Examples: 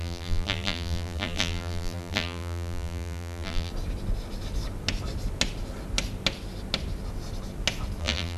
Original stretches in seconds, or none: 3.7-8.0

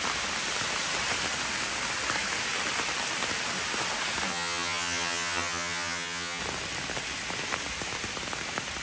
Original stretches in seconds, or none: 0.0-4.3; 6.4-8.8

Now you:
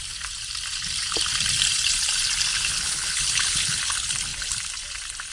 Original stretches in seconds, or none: 0.0-2.5; 3.8-5.3

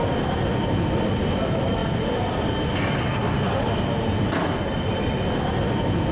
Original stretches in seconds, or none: 0.0-6.1